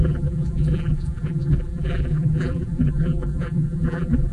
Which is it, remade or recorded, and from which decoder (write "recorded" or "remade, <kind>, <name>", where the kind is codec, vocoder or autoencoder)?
remade, vocoder, BigVGAN v2